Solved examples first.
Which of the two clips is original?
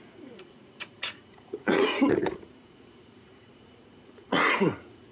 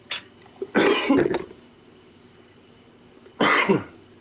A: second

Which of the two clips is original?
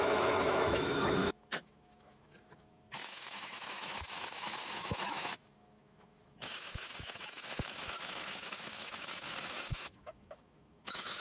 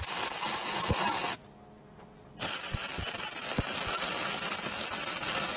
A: second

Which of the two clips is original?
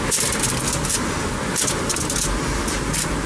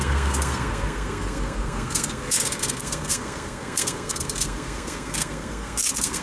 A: first